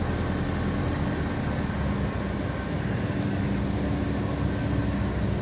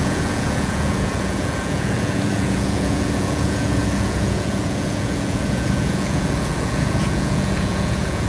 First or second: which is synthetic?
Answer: second